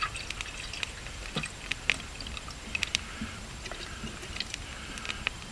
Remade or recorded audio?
recorded